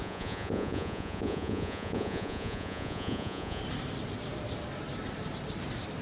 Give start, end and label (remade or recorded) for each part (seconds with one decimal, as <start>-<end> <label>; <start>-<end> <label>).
0.0-3.6 remade; 3.6-6.0 recorded